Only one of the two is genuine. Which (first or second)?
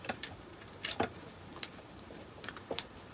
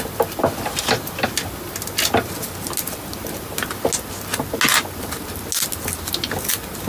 second